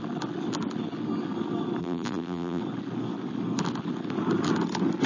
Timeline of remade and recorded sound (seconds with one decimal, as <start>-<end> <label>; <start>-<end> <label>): 0.0-1.8 recorded; 1.8-2.6 remade; 2.6-5.1 recorded